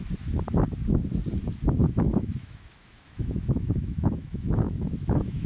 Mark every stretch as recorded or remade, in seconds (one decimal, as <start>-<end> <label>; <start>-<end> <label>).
0.0-1.9 recorded; 1.9-5.5 remade